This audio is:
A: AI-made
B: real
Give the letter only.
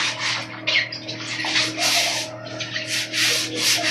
B